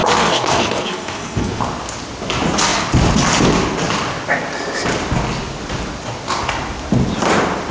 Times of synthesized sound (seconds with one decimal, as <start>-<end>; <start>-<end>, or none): 0.0-1.6